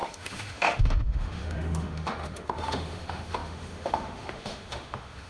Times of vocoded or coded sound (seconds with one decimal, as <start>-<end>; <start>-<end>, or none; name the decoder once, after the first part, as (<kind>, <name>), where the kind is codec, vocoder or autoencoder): 0.0-5.3 (autoencoder, DAC-VAE)